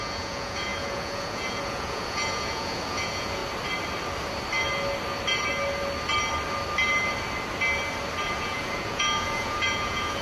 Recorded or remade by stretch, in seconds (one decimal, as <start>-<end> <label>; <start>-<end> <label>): 0.0-3.4 remade; 3.4-8.3 recorded; 8.3-10.2 remade